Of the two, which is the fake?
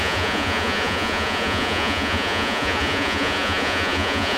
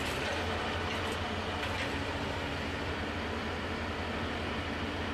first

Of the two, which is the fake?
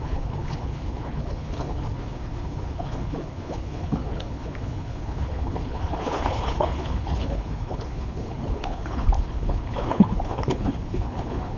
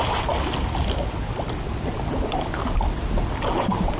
first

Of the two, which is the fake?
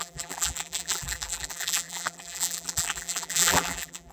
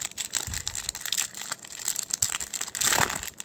first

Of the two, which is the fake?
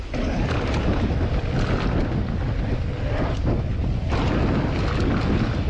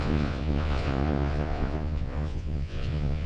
second